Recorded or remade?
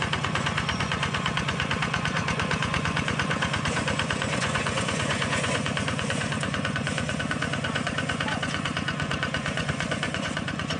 remade